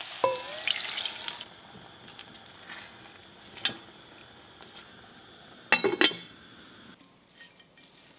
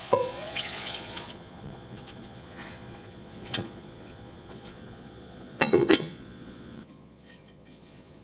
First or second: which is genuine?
first